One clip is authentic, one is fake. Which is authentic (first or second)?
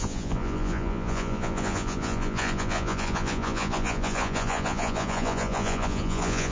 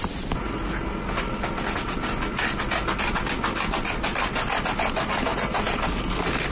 second